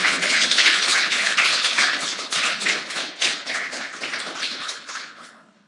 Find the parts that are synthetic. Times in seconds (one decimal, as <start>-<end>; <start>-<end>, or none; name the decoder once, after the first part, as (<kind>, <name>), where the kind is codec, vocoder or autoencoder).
0.0-3.9 (codec, HILCodec); 4.4-5.7